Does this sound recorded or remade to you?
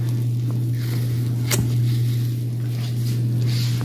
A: recorded